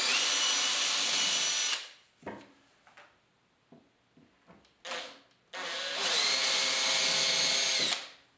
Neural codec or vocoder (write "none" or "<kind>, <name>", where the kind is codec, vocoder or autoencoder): none